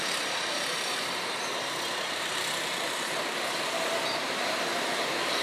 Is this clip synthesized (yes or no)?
yes